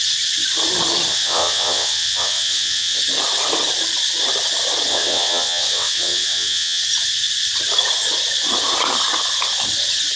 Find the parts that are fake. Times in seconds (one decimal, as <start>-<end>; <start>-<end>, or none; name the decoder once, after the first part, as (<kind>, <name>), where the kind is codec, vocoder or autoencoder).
1.1-3.0 (vocoder, WaveNeXt); 4.9-6.8